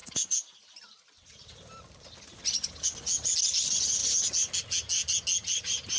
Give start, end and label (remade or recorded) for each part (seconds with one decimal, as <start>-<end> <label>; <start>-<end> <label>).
0.0-3.6 recorded; 3.6-4.0 remade; 4.0-5.6 recorded; 5.6-6.0 remade